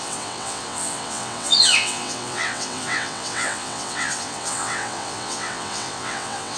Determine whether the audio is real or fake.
fake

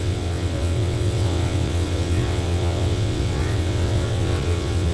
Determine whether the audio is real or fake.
fake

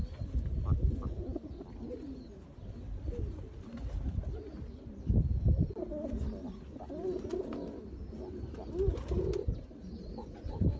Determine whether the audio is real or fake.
real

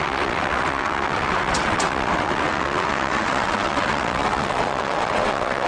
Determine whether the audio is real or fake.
fake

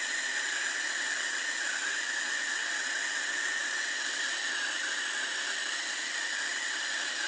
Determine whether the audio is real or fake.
real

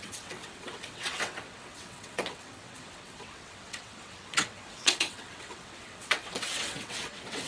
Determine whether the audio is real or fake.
fake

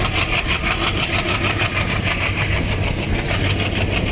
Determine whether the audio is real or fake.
real